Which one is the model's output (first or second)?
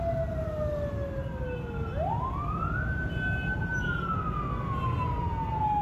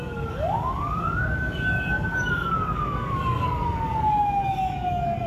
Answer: second